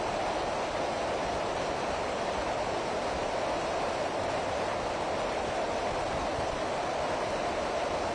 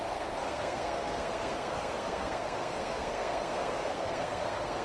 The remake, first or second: second